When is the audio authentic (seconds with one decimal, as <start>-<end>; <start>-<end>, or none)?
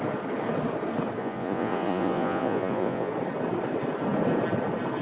0.0-1.2; 3.1-5.0